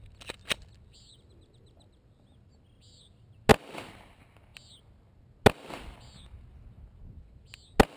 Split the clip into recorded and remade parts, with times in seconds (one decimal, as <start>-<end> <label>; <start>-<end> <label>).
0.0-8.0 recorded